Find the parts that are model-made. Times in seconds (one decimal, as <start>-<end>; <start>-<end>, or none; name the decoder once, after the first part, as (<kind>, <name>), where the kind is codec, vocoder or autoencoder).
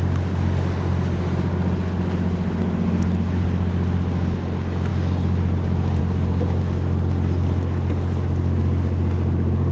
none